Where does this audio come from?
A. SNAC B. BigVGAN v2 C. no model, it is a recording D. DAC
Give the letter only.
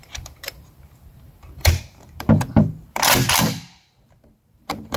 B